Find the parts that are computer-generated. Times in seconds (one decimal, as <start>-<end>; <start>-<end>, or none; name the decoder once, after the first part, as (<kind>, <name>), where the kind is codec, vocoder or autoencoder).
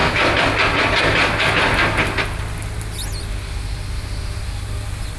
none